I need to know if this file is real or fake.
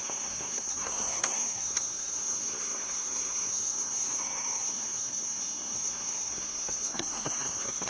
fake